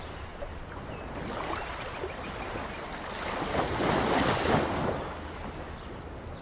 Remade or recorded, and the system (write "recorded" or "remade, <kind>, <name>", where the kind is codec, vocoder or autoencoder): recorded